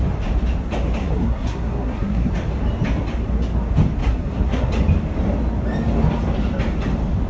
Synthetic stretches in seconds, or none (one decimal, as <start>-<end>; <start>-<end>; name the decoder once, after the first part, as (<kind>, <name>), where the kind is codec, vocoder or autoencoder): 1.0-2.3 (codec, SNAC); 4.0-4.7

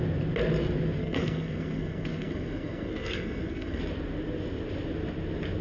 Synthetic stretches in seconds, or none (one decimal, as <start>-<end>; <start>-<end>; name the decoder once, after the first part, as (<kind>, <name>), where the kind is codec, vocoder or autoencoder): 1.0-3.8 (codec, SNAC)

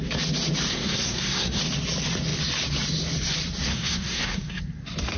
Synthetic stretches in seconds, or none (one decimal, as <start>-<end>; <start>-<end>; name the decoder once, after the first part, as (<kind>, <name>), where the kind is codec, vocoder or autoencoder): 0.7-1.6 (codec, SNAC); 3.7-4.6

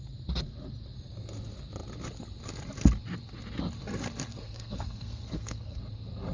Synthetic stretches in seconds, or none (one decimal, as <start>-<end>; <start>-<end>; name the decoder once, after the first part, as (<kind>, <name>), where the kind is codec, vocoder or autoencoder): 4.3-5.8 (codec, SNAC)

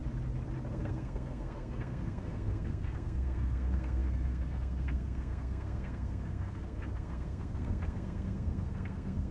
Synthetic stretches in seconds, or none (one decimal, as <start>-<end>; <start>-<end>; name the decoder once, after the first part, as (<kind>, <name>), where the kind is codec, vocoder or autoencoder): 0.7-9.3 (codec, SNAC)